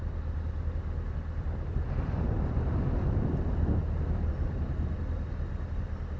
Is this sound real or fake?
real